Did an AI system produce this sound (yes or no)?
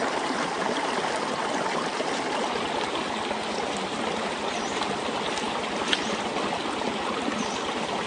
no